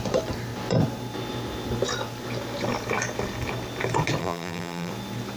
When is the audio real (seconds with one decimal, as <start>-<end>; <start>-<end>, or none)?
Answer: 0.0-4.2; 4.9-5.4